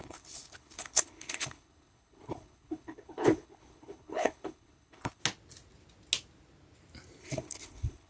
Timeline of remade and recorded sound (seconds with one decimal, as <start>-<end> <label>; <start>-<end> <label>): 0.0-5.2 remade; 5.2-7.2 recorded; 7.2-8.1 remade